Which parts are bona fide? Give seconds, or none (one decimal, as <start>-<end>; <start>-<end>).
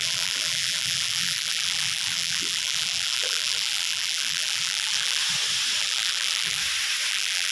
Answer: 5.2-5.8; 6.6-7.1